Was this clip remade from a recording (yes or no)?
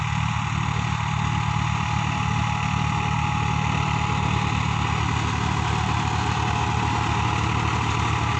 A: no